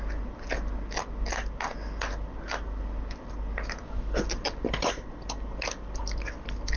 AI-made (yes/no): no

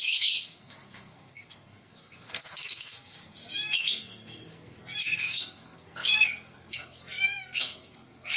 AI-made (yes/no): yes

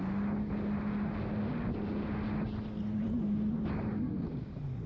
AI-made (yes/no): no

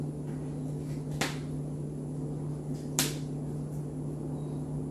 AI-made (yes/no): no